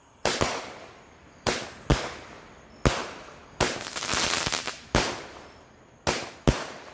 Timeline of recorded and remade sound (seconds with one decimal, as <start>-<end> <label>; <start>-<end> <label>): 0.0-6.9 recorded